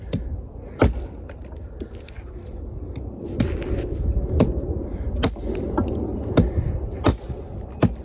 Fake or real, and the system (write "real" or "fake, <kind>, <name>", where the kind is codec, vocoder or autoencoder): real